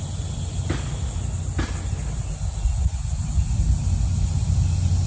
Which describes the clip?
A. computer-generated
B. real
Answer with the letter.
B